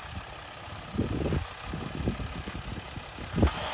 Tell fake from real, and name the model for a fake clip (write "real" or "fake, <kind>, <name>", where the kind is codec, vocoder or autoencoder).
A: real